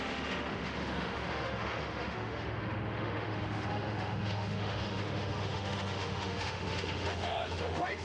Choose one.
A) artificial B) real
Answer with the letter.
A